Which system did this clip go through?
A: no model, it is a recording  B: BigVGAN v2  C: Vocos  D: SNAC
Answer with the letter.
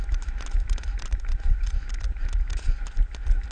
A